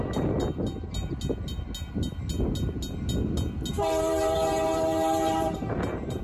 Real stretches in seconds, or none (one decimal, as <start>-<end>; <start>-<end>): 0.0-3.7